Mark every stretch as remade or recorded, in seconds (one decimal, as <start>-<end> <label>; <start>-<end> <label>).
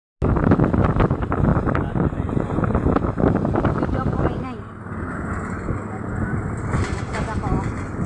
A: 0.0-8.1 recorded